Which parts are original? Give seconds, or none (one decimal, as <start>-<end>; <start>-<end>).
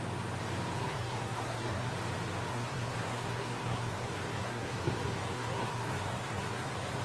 0.0-0.8; 1.9-2.5